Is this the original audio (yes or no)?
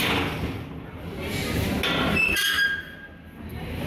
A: yes